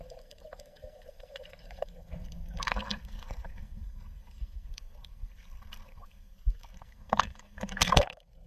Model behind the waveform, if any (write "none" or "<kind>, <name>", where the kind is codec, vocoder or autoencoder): codec, SNAC